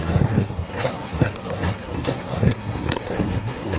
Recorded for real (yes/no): no